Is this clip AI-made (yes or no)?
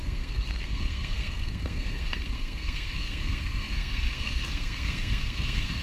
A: yes